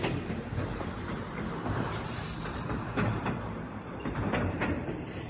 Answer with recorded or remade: remade